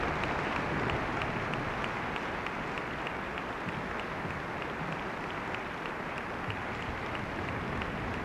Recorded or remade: recorded